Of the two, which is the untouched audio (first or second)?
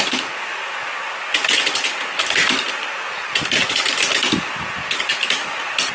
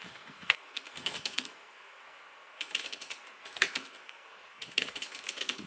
first